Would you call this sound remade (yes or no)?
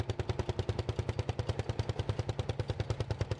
no